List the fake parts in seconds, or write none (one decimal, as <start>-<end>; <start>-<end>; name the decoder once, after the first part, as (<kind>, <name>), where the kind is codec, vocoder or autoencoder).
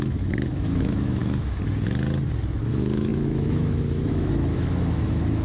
0.0-1.2 (autoencoder, DAC-VAE); 2.7-5.4